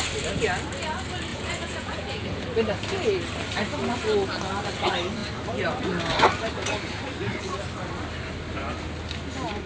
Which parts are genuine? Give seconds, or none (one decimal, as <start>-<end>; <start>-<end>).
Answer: 0.0-1.3; 2.4-9.7